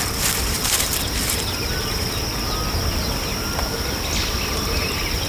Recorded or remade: recorded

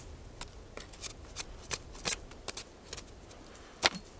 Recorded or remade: recorded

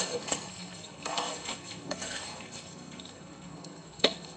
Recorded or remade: remade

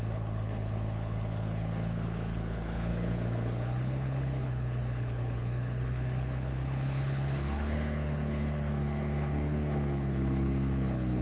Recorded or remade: remade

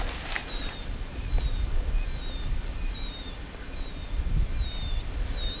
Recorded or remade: recorded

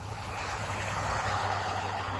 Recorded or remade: remade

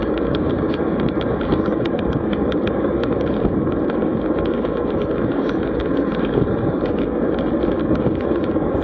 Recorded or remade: remade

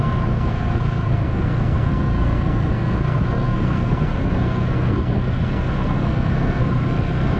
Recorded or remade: remade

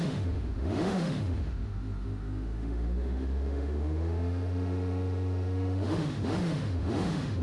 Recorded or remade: remade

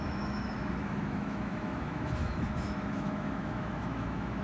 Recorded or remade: remade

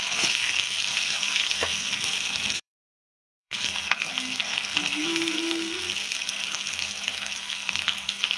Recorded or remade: remade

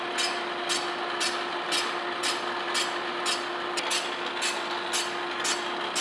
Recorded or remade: recorded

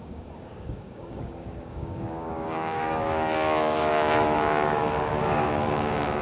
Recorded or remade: remade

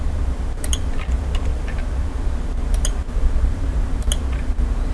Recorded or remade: recorded